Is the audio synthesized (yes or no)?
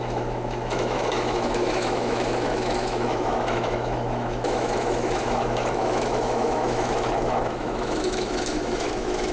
yes